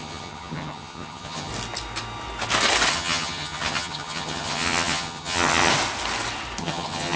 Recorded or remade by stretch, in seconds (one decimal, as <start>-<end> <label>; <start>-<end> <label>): 0.0-1.5 remade; 1.5-2.9 recorded; 2.9-5.7 remade; 5.7-6.6 recorded; 6.6-7.2 remade